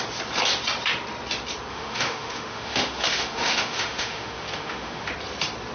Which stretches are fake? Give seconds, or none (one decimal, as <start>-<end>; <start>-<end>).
1.7-5.1